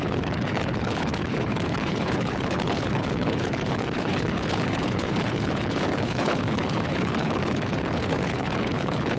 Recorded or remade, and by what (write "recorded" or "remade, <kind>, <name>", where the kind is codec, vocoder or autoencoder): remade, codec, HILCodec